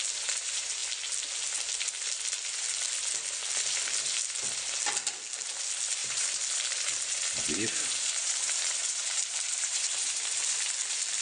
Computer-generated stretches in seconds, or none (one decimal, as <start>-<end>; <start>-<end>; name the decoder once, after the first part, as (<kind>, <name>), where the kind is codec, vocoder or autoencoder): 6.0-10.3 (vocoder, BigVGAN v2)